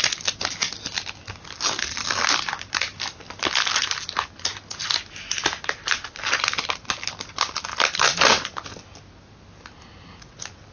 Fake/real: real